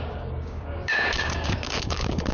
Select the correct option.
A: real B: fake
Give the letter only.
B